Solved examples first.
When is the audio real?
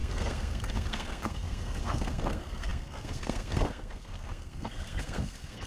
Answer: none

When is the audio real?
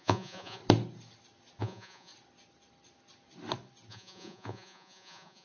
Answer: 0.6-1.6; 2.1-3.9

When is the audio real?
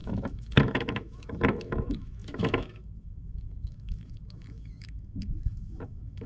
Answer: none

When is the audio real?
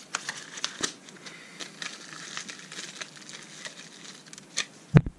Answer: 1.5-4.6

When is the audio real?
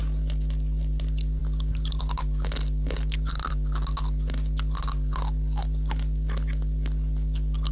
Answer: 0.0-7.7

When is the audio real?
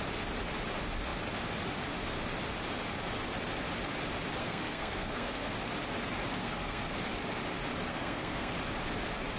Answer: 0.0-4.4; 5.5-6.4; 6.9-7.9; 8.5-9.4